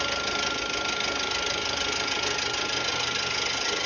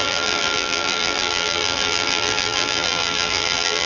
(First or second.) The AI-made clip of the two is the second